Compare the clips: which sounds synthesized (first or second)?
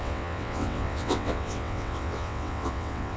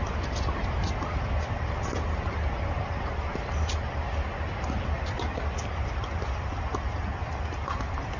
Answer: first